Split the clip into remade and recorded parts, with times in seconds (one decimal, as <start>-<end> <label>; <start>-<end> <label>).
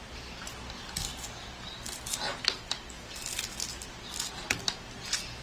0.0-0.5 remade; 0.5-5.4 recorded